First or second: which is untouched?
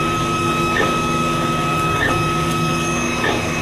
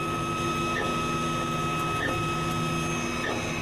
second